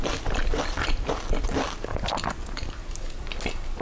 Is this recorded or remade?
recorded